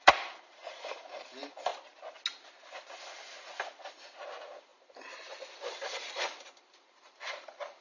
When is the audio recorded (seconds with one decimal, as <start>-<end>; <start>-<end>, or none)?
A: 1.7-3.9